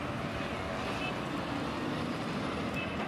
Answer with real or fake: real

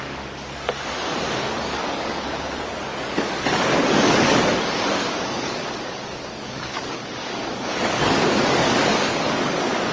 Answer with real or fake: fake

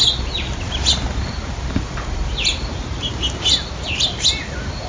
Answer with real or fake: real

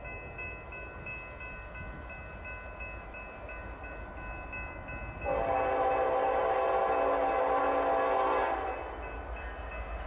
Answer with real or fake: real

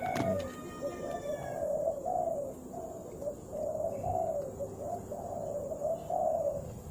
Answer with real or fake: real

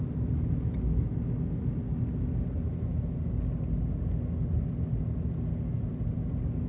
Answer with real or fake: real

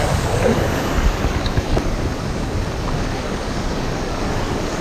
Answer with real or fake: fake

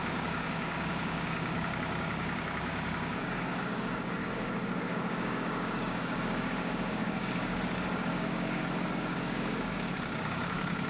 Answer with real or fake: fake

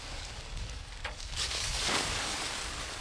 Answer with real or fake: fake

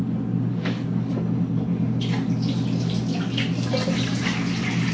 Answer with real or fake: real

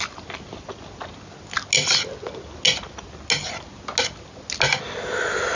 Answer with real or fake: real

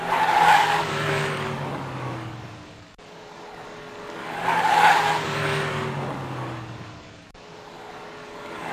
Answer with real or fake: fake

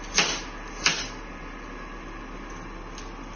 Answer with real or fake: real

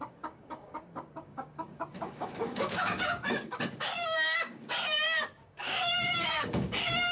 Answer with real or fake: fake